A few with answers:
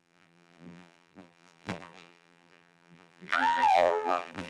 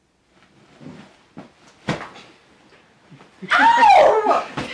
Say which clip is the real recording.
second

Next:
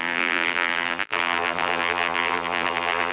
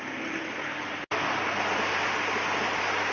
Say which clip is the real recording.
second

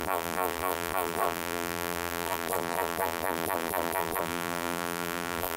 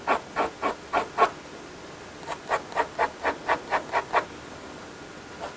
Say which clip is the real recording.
second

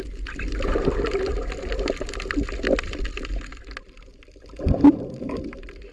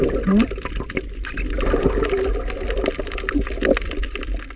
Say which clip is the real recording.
second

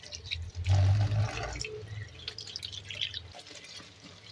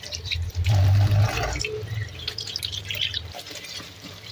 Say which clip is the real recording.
first